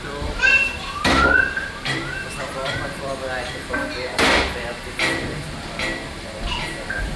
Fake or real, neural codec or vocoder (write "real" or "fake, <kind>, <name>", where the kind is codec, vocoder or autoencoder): fake, vocoder, BigVGAN v2